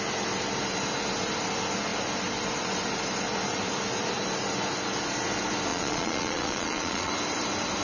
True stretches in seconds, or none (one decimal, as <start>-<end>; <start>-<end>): 0.0-5.7; 7.1-7.8